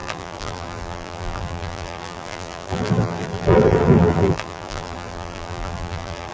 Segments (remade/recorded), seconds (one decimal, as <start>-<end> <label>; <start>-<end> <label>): 0.0-6.3 remade